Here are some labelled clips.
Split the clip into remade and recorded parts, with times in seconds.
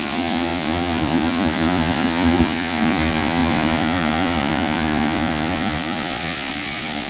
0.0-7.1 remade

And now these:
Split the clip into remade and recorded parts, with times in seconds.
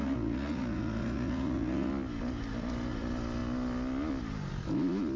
0.0-1.9 remade; 1.9-5.2 recorded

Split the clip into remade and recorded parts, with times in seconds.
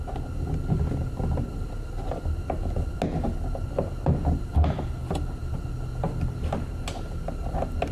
0.0-7.9 recorded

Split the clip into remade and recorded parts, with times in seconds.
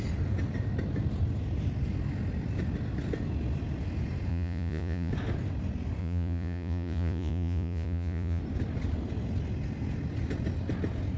0.0-4.3 recorded; 4.3-5.1 remade; 5.1-6.0 recorded; 6.0-8.4 remade; 8.4-11.2 recorded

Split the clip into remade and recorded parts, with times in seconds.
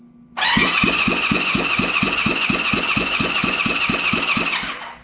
0.0-0.6 recorded; 0.6-3.6 remade; 3.6-5.0 recorded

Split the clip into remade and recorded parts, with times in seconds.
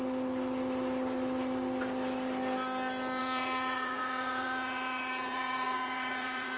0.0-3.2 recorded; 3.2-6.6 remade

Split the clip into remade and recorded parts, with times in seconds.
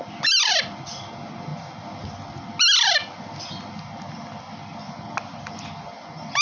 0.0-6.4 recorded